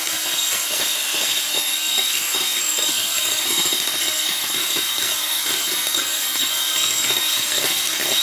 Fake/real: fake